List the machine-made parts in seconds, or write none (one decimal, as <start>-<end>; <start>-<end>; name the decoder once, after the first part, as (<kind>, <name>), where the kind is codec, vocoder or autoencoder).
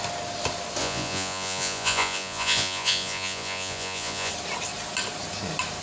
0.8-4.3 (vocoder, Vocos)